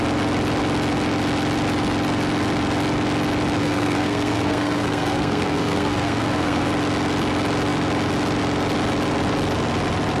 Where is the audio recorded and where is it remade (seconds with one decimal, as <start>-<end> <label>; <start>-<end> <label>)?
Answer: 0.0-3.6 recorded; 3.6-6.7 remade; 6.7-10.2 recorded

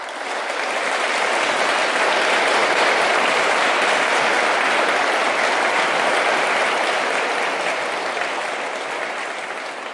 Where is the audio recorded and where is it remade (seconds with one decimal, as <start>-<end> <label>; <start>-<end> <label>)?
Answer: 0.0-9.9 remade

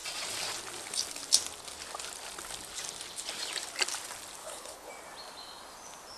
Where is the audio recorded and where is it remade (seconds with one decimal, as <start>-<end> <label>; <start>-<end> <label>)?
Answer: 0.0-4.4 recorded; 4.4-4.9 remade; 4.9-6.2 recorded

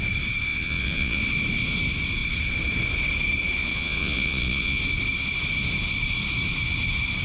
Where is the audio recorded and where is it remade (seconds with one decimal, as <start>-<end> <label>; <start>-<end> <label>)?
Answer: 0.0-0.5 recorded; 0.5-1.2 remade; 1.2-3.6 recorded; 3.6-4.8 remade; 4.8-7.2 recorded

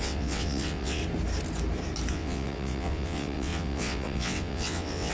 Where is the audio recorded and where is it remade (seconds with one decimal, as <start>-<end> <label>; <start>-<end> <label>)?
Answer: 0.0-1.0 remade; 1.0-2.1 recorded; 2.1-5.1 remade

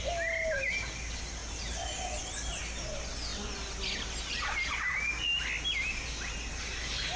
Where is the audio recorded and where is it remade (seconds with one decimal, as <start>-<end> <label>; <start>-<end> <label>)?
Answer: 0.0-7.2 recorded